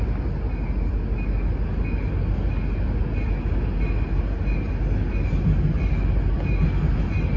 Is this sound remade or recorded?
recorded